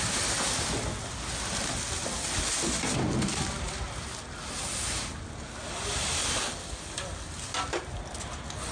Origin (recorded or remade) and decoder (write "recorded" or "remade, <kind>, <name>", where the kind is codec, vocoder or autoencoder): recorded